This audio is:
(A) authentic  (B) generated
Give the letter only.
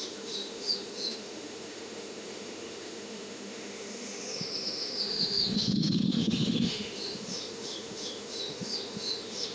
B